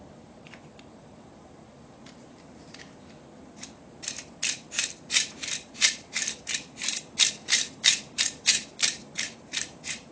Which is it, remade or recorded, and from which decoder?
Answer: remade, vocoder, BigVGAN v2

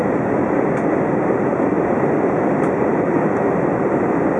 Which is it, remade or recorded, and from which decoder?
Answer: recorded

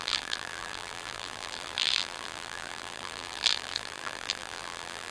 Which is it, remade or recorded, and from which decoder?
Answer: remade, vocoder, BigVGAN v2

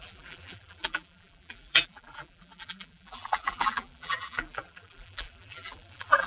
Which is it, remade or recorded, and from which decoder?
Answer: remade, vocoder, BigVGAN v2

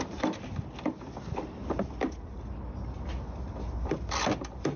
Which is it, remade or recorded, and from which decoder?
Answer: recorded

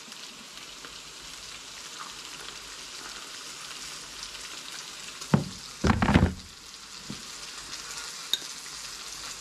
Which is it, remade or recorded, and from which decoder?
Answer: recorded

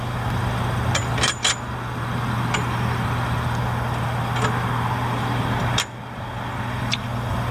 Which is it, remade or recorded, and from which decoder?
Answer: recorded